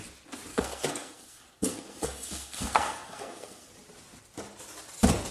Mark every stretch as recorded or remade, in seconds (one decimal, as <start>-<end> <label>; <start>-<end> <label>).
0.0-0.5 recorded; 0.5-3.7 remade; 3.7-5.3 recorded